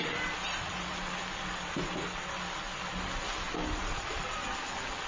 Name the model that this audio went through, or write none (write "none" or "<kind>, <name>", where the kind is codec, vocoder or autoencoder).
none